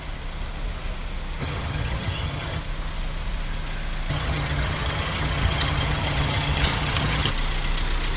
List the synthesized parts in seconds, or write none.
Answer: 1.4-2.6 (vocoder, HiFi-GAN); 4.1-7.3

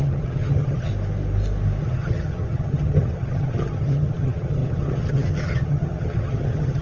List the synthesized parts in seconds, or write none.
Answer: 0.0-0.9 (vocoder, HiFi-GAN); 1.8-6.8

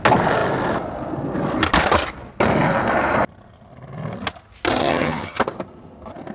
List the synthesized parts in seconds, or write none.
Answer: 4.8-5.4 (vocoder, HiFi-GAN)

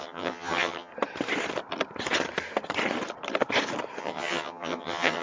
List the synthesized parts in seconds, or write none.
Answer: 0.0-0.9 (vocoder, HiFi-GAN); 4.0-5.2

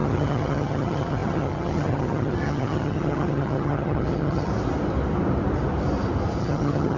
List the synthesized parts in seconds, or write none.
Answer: 0.0-4.5 (vocoder, HiFi-GAN); 6.4-7.0

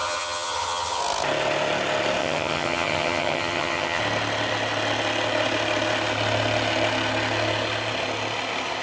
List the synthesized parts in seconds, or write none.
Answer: 0.0-1.0 (vocoder, HiFi-GAN); 2.2-4.0